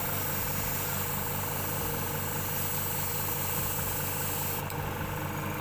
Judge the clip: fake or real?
real